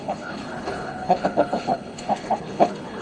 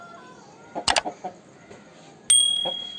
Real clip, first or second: second